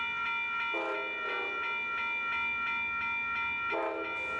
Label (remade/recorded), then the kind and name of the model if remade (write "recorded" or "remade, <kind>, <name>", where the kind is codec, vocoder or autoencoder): recorded